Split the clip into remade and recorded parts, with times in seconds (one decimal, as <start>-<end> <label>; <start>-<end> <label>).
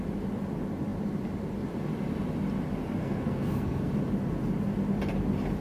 0.0-3.0 recorded; 3.0-3.9 remade; 3.9-5.6 recorded